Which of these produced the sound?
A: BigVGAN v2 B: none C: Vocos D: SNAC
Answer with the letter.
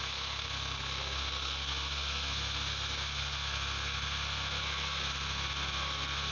D